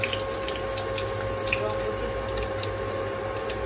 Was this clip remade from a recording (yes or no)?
no